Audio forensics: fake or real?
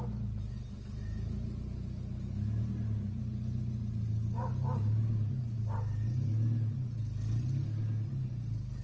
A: real